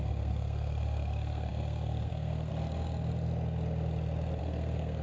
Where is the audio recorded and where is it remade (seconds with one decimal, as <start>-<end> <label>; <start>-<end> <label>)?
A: 0.0-2.5 remade; 2.5-4.4 recorded; 4.4-5.0 remade